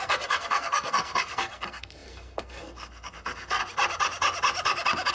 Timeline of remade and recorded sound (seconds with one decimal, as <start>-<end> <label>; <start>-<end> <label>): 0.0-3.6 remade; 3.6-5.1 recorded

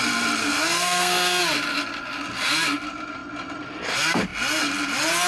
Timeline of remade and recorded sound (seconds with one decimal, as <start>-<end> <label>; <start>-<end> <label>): 0.0-0.4 recorded; 0.4-1.4 remade; 1.4-5.3 recorded

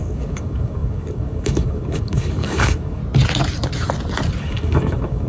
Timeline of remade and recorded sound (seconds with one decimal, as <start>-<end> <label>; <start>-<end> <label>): 0.0-3.0 remade; 3.0-4.4 recorded; 4.4-5.3 remade

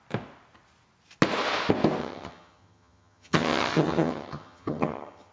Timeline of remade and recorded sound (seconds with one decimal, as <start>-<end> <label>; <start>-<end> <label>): 0.0-2.0 recorded; 2.0-5.3 remade